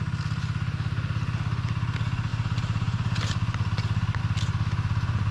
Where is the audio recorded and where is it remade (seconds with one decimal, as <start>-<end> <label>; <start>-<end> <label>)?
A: 0.0-2.3 recorded; 2.3-4.2 remade; 4.2-5.3 recorded